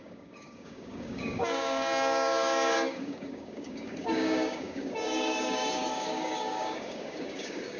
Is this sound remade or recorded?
remade